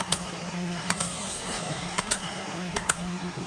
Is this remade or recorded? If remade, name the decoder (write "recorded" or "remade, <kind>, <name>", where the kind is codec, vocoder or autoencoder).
remade, codec, SNAC